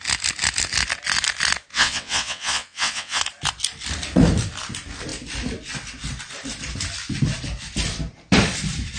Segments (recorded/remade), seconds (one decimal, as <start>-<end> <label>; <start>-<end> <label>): 0.0-1.7 recorded; 1.7-3.2 remade; 3.2-9.0 recorded